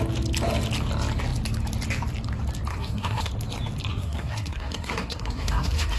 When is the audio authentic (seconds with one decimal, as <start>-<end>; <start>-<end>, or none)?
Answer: 0.0-2.7; 3.3-3.9